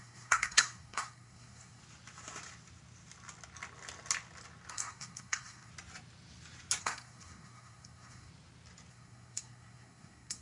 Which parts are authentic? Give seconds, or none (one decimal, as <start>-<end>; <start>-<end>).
1.8-4.7; 5.7-6.8; 8.3-8.9